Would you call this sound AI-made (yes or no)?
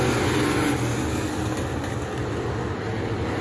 no